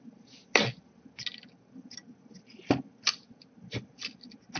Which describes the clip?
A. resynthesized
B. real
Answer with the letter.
B